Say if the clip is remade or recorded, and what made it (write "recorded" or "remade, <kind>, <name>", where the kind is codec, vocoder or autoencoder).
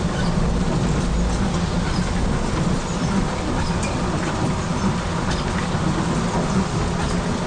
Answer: recorded